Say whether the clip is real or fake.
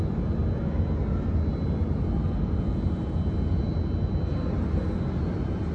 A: real